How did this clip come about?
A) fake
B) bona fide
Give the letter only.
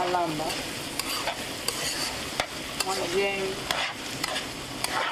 B